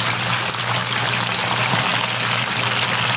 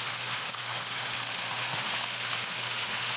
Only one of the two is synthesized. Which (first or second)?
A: second